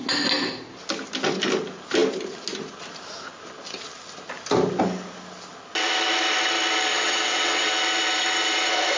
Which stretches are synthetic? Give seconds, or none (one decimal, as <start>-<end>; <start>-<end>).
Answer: 6.9-7.7